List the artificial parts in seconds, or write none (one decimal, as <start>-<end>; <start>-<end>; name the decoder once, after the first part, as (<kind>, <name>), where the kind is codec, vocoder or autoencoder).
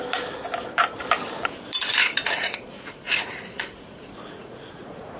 2.0-5.2 (vocoder, Vocos)